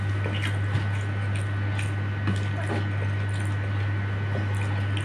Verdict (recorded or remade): recorded